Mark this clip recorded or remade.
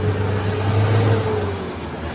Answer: recorded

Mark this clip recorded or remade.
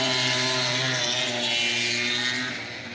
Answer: recorded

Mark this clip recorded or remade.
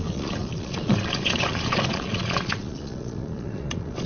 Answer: remade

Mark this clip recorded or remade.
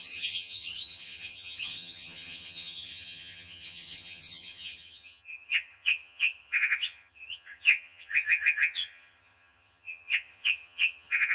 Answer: remade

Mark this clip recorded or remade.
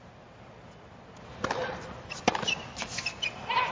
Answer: recorded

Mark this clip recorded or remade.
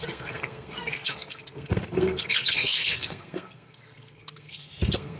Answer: remade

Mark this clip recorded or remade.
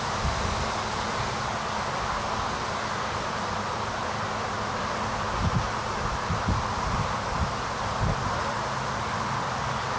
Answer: recorded